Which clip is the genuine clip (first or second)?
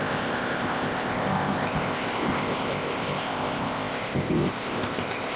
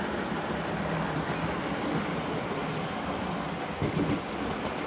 second